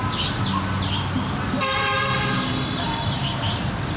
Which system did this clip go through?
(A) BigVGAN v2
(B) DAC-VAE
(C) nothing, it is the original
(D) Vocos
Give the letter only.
C